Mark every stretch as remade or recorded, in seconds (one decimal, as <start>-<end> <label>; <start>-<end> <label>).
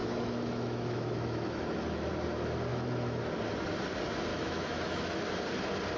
0.0-2.1 remade; 2.1-2.7 recorded; 2.7-3.2 remade; 3.2-4.3 recorded; 4.3-5.2 remade; 5.2-6.0 recorded